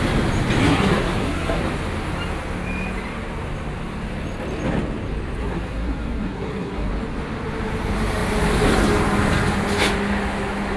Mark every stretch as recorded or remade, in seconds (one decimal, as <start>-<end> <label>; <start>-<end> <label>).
0.0-0.6 recorded; 0.6-1.6 remade; 1.6-5.4 recorded; 5.4-6.9 remade; 6.9-10.8 recorded